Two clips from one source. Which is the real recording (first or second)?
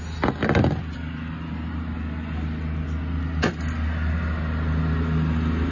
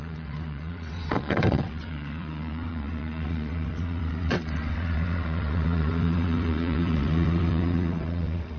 first